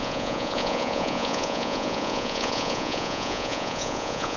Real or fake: fake